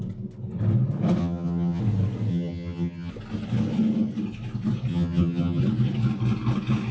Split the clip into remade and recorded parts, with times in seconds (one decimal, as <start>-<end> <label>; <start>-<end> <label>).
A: 0.0-1.2 recorded; 1.2-1.8 remade; 1.8-2.3 recorded; 2.3-3.1 remade; 3.1-4.9 recorded; 4.9-5.6 remade; 5.6-6.9 recorded